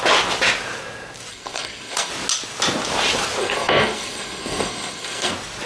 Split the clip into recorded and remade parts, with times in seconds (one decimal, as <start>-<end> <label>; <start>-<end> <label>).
0.0-1.3 recorded; 1.3-2.1 remade; 2.1-3.4 recorded; 3.4-5.3 remade; 5.3-5.7 recorded